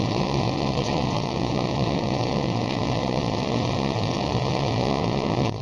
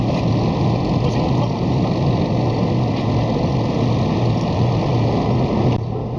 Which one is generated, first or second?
first